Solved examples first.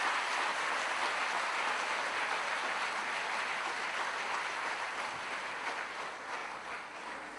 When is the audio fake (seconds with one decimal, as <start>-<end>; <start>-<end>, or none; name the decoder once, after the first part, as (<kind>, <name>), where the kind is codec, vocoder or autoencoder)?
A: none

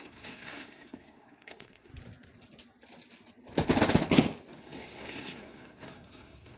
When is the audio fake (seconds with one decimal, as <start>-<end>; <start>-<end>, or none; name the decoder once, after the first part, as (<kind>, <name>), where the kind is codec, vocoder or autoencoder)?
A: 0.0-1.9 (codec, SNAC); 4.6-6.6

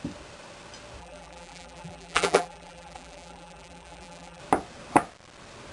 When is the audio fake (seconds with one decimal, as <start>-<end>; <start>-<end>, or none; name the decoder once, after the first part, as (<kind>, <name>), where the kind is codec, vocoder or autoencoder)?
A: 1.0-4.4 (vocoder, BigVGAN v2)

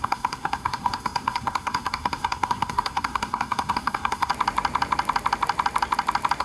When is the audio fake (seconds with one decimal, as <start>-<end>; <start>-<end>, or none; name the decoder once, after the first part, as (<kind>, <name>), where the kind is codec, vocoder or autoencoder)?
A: 0.0-4.3 (codec, SNAC)